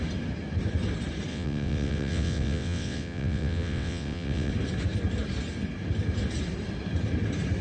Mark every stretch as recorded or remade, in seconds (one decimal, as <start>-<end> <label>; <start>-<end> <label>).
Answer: 0.0-1.3 recorded; 1.3-4.5 remade; 4.5-7.6 recorded